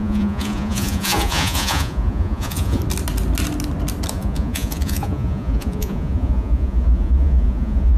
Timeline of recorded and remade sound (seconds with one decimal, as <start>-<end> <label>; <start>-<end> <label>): 0.0-2.8 remade; 2.8-4.1 recorded; 4.1-8.0 remade